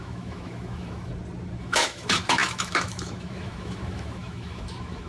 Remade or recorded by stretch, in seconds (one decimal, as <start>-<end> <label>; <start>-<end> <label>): 0.0-1.1 remade; 1.1-1.6 recorded; 1.6-5.1 remade